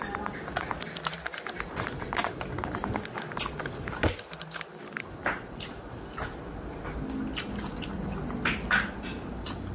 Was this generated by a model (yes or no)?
no